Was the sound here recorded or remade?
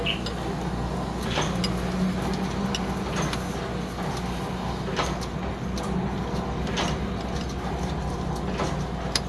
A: recorded